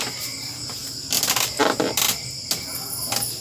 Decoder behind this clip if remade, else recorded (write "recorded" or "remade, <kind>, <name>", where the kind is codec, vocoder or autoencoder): recorded